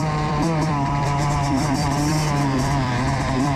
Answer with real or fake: fake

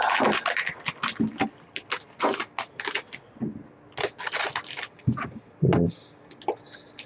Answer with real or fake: real